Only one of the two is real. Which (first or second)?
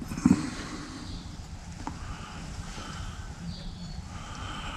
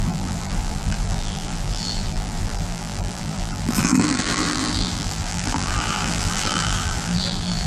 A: first